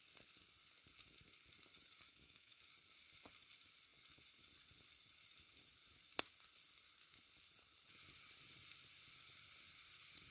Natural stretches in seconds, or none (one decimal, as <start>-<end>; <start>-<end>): 0.0-2.1; 2.6-10.3